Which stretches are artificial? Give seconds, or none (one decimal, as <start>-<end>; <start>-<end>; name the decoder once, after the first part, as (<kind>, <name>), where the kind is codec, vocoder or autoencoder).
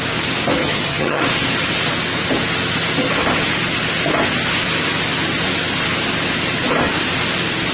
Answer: 0.6-1.2 (vocoder, HiFi-GAN)